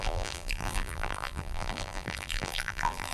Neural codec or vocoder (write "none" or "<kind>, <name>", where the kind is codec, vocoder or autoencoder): vocoder, BigVGAN v2